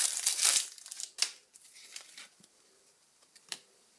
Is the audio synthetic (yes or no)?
yes